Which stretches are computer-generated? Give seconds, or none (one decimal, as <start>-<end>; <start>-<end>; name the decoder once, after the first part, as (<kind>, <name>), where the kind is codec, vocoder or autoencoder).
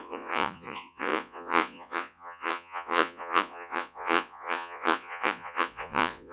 0.0-6.3 (vocoder, Vocos)